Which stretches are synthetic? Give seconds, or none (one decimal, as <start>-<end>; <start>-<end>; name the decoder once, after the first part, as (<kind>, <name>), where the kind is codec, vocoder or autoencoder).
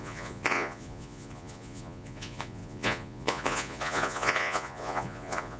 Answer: 0.0-5.6 (vocoder, Vocos)